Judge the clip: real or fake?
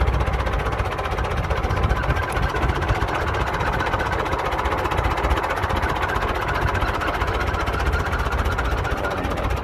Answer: real